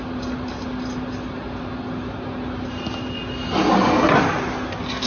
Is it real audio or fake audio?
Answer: real